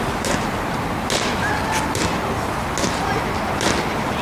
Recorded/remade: recorded